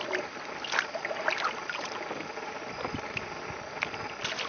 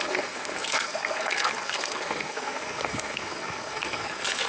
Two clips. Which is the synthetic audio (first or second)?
second